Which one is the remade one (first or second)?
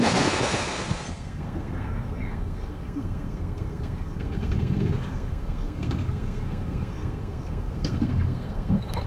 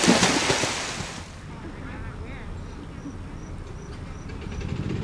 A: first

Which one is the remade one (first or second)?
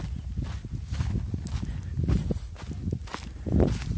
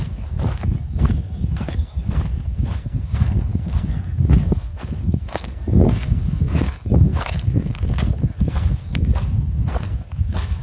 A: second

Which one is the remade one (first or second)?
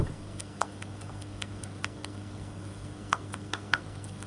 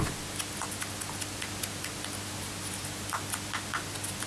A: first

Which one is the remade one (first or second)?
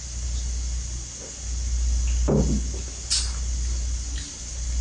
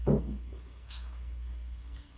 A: second